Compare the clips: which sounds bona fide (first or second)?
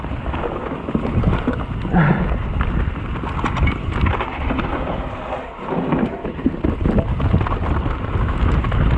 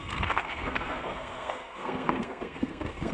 first